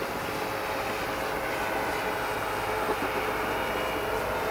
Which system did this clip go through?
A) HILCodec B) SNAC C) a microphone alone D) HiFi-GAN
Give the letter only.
C